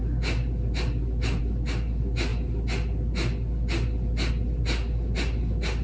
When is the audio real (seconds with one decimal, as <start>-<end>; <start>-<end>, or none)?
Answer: 0.0-5.8